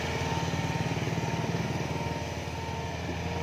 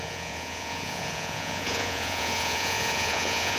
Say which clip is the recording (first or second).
first